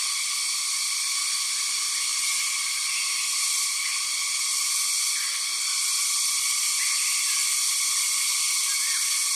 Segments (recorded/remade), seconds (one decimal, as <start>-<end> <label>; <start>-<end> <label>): 0.0-9.4 recorded